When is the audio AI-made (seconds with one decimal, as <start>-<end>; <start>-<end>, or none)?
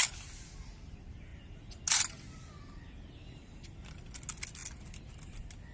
none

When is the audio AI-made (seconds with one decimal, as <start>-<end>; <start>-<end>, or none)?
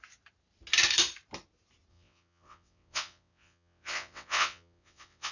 1.9-5.3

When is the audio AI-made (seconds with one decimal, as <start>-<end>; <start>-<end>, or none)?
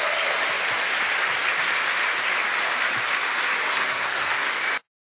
3.7-4.5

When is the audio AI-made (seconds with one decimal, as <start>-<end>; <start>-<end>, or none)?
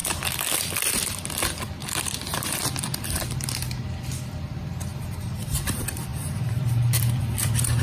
0.0-7.8